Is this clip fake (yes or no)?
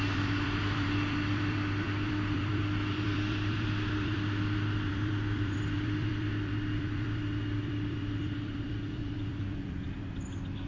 yes